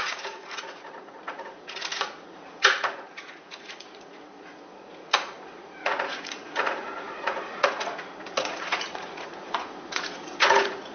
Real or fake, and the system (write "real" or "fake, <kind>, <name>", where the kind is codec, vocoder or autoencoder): fake, vocoder, Vocos